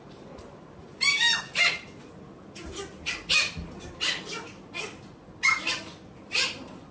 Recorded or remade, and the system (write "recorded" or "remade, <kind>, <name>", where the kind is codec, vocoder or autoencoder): recorded